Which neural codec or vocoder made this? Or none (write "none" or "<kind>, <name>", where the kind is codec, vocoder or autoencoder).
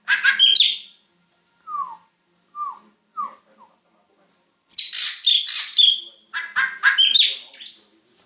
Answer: none